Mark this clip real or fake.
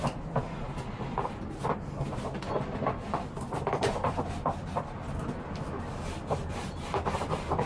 real